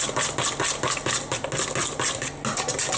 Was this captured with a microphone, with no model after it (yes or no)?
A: yes